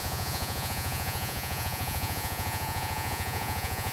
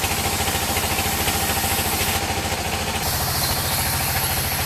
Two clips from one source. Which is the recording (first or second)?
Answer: second